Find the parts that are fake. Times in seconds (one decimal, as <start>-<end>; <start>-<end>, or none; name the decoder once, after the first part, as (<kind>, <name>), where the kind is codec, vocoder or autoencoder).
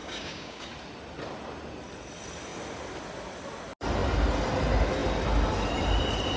0.0-0.7 (codec, DAC)